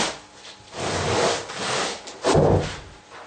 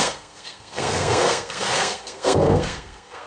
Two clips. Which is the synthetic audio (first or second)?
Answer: second